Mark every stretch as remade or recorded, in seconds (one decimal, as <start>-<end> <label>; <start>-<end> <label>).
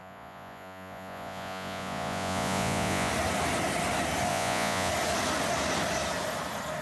0.0-3.1 remade; 3.1-4.3 recorded; 4.3-4.9 remade; 4.9-6.8 recorded